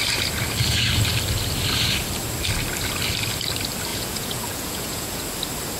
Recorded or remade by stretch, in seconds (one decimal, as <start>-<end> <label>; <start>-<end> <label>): 0.0-3.9 recorded; 3.9-5.2 remade; 5.2-5.8 recorded

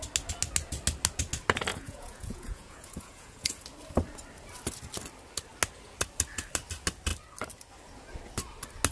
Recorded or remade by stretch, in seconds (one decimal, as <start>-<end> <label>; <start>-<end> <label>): 0.0-1.7 recorded; 1.7-3.6 remade; 3.6-8.9 recorded

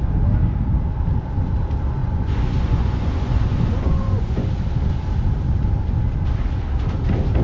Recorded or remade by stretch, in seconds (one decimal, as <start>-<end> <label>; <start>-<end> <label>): 0.0-2.0 recorded; 2.0-4.5 remade; 4.5-7.4 recorded

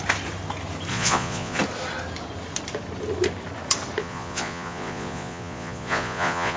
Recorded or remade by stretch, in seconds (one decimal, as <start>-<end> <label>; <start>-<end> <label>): 0.0-0.9 recorded; 0.9-1.6 remade; 1.6-4.0 recorded; 4.0-6.6 remade